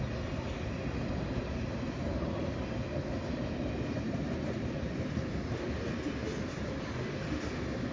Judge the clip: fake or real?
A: real